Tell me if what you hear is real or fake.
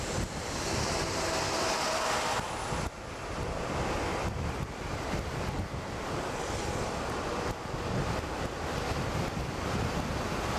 real